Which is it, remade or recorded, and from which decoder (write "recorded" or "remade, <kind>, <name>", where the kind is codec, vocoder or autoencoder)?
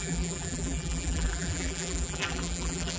remade, vocoder, BigVGAN v2